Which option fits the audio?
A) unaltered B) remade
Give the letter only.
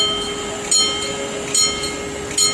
A